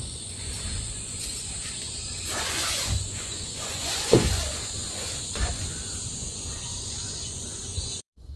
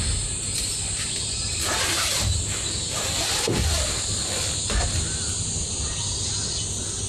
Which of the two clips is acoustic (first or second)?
second